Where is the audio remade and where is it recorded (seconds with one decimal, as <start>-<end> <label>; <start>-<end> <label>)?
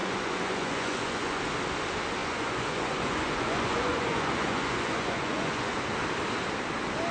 0.0-1.4 remade; 1.4-2.2 recorded; 2.2-5.8 remade; 5.8-7.1 recorded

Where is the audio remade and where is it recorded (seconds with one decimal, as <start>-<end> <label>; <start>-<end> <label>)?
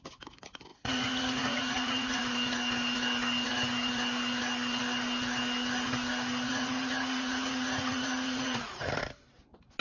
0.0-0.7 recorded; 0.7-2.2 remade; 2.2-6.5 recorded; 6.5-8.9 remade; 8.9-9.8 recorded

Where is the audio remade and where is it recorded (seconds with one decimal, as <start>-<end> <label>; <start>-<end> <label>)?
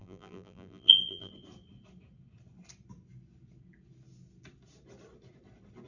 0.0-1.3 remade; 1.3-5.9 recorded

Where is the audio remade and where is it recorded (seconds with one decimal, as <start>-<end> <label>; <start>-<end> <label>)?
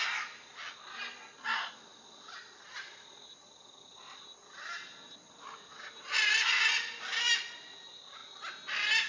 0.0-9.1 recorded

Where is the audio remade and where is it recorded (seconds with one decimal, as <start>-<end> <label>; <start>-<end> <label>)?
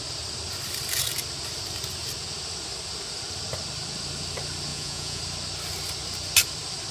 0.0-4.7 recorded; 4.7-5.2 remade; 5.2-6.9 recorded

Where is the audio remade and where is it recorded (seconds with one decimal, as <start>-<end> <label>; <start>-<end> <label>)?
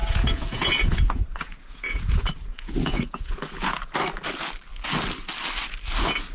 0.0-3.8 remade; 3.8-6.3 recorded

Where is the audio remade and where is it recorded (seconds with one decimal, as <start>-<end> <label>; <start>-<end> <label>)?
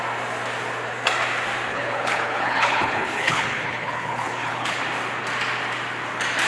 0.0-1.7 recorded; 1.7-4.8 remade; 4.8-6.5 recorded